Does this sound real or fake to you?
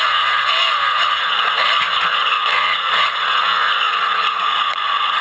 fake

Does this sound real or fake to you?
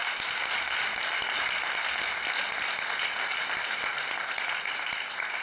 real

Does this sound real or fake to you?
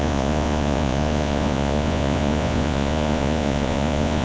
fake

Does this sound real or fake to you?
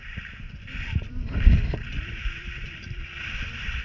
fake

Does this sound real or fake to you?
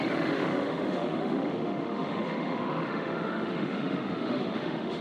fake